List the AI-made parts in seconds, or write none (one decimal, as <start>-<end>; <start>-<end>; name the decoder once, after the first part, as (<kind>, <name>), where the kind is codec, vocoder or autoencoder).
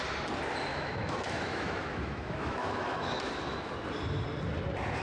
0.7-3.7 (autoencoder, DAC-VAE)